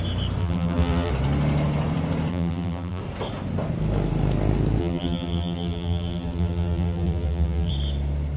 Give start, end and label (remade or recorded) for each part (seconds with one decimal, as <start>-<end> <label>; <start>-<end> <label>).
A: 0.0-0.4 recorded; 0.4-1.1 remade; 1.1-2.3 recorded; 2.3-3.0 remade; 3.0-4.8 recorded; 4.8-7.7 remade; 7.7-8.4 recorded